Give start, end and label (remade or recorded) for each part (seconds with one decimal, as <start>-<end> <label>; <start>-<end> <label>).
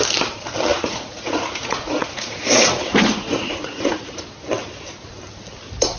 0.0-0.7 recorded; 0.7-4.3 remade; 4.3-6.0 recorded